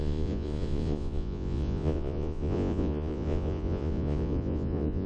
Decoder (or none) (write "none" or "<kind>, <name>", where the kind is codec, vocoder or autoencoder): vocoder, Vocos